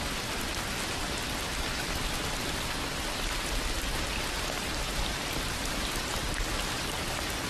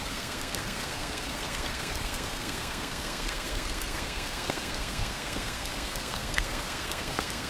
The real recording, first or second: first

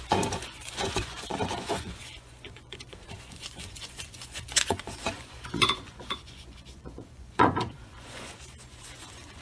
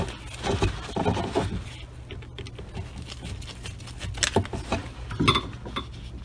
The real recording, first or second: second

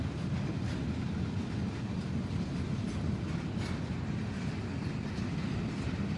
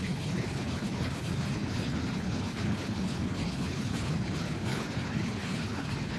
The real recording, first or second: first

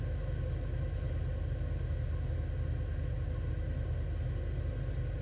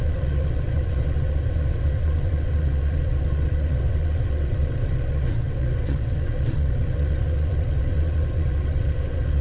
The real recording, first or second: first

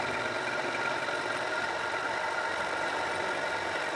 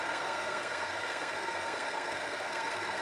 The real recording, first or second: first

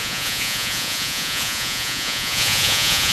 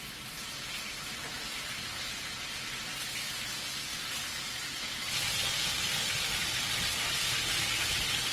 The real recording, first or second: second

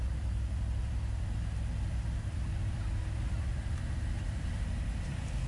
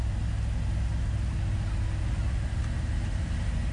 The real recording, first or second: second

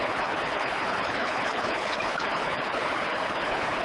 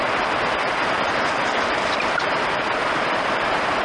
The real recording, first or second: second